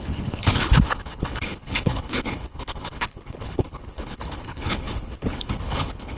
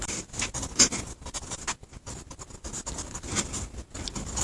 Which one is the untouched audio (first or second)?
second